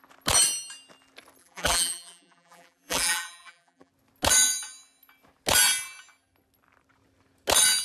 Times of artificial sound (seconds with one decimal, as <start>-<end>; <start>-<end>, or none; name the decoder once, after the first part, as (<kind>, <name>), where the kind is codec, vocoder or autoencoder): 1.4-3.9 (vocoder, BigVGAN v2)